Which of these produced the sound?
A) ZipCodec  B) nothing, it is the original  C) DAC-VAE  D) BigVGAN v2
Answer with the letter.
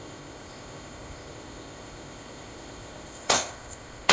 A